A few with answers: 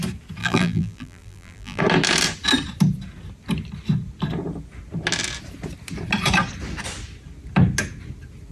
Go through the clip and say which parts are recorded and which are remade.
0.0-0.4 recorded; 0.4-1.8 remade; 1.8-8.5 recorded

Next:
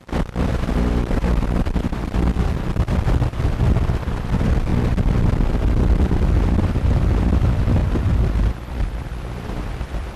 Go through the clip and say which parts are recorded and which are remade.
0.0-4.7 remade; 4.7-5.5 recorded; 5.5-7.8 remade; 7.8-8.7 recorded; 8.7-10.2 remade

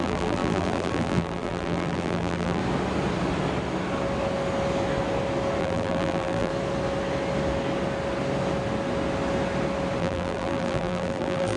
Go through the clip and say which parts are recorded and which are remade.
0.0-2.6 remade; 2.6-5.6 recorded; 5.6-6.5 remade; 6.5-10.0 recorded; 10.0-11.6 remade

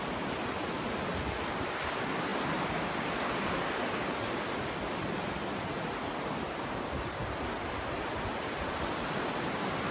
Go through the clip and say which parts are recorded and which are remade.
0.0-9.9 recorded